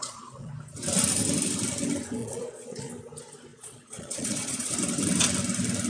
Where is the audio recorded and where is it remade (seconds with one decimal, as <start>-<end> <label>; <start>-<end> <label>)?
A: 0.0-0.5 remade; 0.5-2.2 recorded; 2.2-2.9 remade; 2.9-3.5 recorded; 3.5-4.7 remade; 4.7-5.9 recorded